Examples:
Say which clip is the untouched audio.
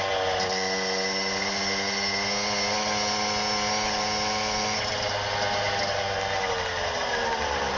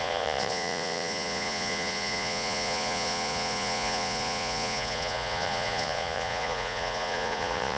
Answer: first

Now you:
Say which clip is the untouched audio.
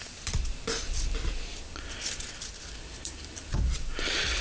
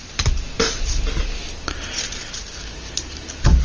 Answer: second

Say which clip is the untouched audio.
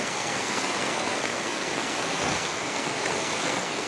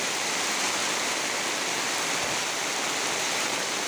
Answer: second